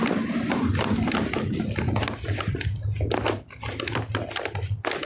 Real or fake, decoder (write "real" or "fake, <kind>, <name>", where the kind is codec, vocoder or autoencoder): real